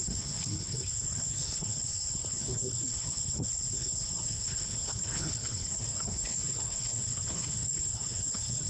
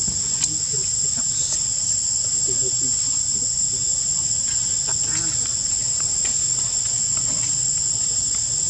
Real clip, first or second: second